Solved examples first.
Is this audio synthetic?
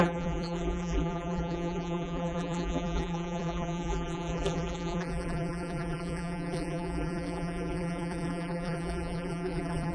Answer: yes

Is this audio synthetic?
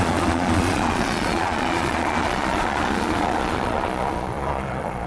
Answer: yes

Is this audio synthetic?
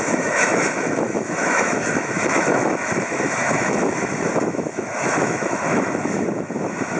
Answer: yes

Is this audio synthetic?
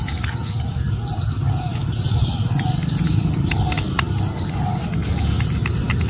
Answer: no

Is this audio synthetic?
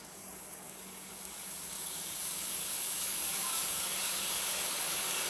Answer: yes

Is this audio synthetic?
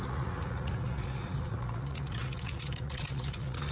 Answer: yes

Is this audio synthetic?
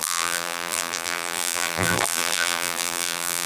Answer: yes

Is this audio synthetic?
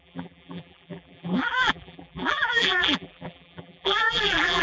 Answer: yes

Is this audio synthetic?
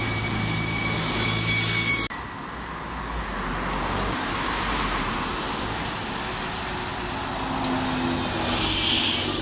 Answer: no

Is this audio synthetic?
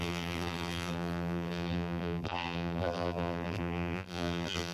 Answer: yes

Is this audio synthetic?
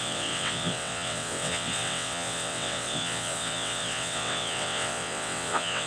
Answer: yes